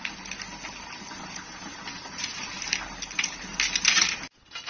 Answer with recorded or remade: recorded